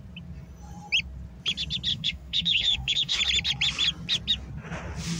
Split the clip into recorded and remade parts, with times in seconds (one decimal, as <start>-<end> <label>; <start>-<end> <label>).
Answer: 0.0-1.9 recorded; 1.9-3.2 remade; 3.2-5.2 recorded